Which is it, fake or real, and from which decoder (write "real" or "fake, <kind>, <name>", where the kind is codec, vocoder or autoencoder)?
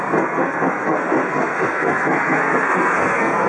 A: fake, codec, SNAC